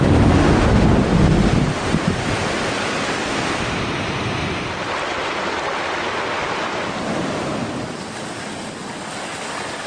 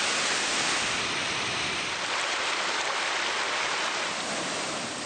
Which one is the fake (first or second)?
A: second